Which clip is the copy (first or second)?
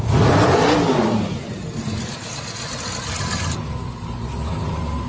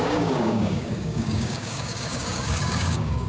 second